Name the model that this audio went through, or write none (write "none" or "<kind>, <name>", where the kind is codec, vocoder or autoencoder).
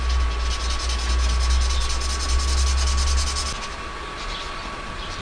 none